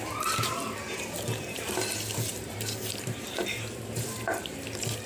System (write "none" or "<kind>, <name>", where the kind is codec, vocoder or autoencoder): vocoder, BigVGAN v2